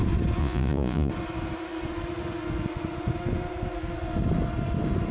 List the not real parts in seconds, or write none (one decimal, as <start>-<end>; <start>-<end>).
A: 0.4-1.1